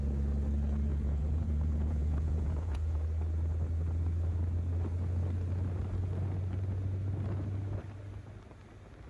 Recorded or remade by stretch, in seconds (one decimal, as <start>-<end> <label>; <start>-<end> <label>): 0.0-0.9 recorded; 0.9-3.0 remade; 3.0-9.1 recorded